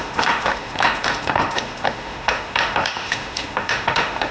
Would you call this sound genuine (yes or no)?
no